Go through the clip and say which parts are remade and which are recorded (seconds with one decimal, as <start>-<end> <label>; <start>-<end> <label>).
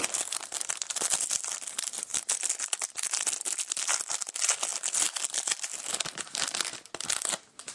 0.0-7.7 recorded